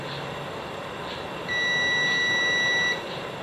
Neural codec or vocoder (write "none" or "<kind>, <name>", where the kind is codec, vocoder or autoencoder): none